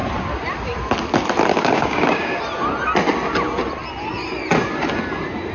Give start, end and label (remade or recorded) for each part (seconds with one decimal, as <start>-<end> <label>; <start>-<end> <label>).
0.0-1.5 recorded; 1.5-2.4 remade; 2.4-5.5 recorded